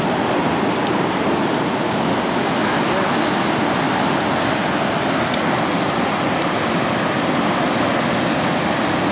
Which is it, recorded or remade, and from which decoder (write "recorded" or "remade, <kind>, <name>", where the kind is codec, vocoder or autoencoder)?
recorded